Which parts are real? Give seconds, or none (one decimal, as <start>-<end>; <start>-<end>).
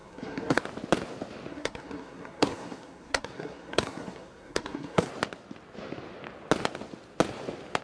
0.6-1.5; 5.1-7.8